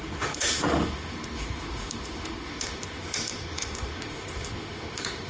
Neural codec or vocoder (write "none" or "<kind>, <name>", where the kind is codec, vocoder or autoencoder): autoencoder, DAC-VAE